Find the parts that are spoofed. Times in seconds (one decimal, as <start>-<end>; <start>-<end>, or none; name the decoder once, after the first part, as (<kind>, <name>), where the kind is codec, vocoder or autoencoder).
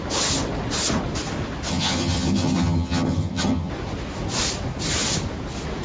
1.7-3.7 (vocoder, HiFi-GAN)